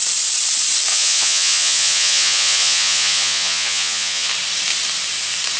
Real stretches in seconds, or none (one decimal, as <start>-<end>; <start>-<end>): 0.0-0.9; 4.3-5.6